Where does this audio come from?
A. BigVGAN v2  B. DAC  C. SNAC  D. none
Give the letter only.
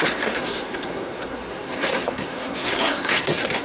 C